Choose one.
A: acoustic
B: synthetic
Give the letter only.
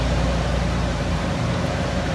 B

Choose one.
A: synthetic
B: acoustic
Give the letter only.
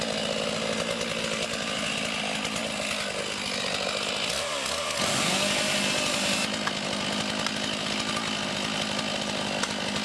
B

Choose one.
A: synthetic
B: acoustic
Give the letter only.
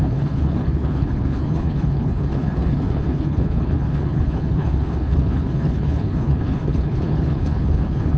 A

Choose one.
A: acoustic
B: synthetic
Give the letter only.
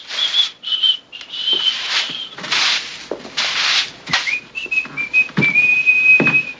A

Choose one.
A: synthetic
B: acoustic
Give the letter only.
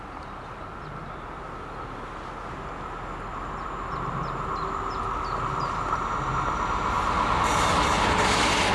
B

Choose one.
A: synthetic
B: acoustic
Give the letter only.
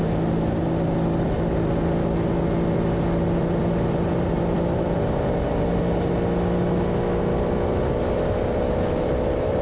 B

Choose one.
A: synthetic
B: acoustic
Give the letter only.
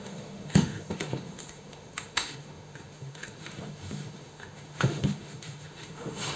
A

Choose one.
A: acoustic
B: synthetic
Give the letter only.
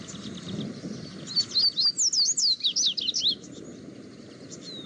A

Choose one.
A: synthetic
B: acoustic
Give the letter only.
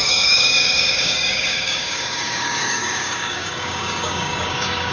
A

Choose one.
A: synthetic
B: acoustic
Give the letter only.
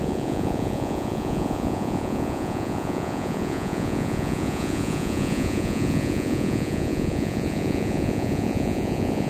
A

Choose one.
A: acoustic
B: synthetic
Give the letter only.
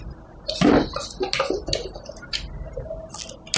A